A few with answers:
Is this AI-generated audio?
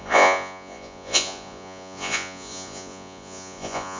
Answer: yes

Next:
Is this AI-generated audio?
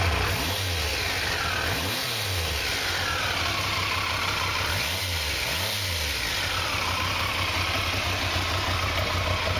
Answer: no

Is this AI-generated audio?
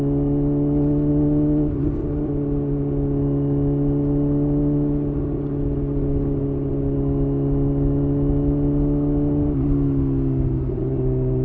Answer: no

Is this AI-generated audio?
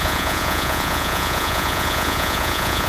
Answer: yes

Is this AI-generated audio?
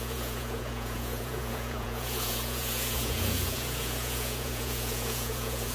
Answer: yes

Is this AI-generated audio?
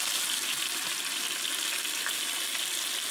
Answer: no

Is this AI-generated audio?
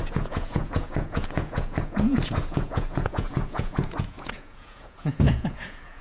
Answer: yes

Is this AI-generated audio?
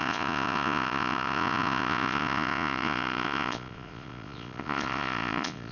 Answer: yes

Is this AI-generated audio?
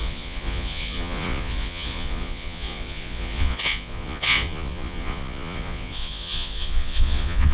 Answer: yes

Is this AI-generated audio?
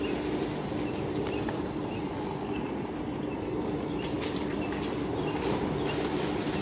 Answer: no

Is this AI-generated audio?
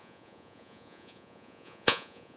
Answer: yes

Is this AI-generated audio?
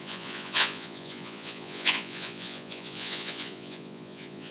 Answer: yes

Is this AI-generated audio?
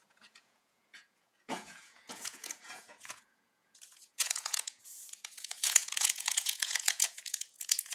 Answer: yes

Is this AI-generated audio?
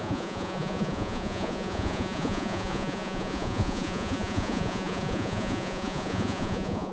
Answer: yes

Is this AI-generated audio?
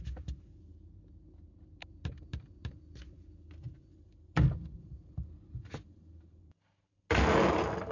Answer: no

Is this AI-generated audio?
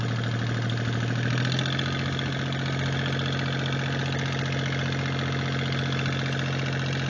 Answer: no